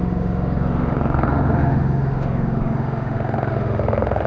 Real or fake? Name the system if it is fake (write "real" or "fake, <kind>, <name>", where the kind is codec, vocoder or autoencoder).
fake, autoencoder, DAC-VAE